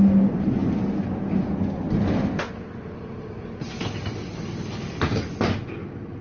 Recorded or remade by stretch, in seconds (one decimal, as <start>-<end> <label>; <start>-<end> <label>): 0.0-6.2 recorded